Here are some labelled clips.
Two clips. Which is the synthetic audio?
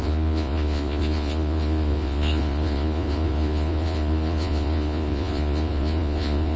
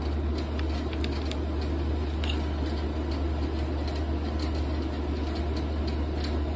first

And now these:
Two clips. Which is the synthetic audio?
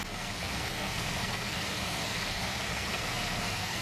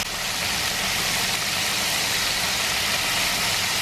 first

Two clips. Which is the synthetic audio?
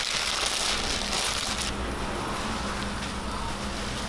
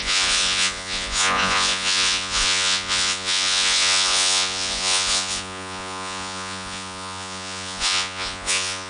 second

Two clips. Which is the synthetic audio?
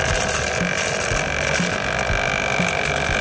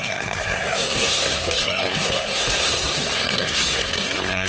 second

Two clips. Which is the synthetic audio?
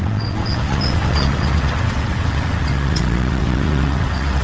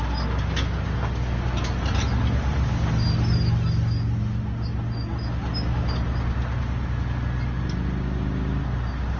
first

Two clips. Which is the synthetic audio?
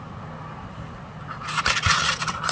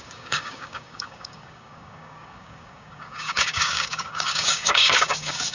second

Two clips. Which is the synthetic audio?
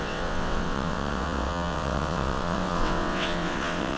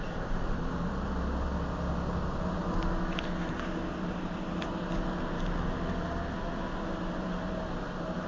first